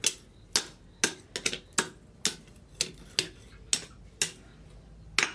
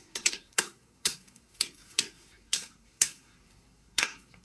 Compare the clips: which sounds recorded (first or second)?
first